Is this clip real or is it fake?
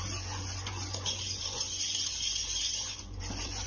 fake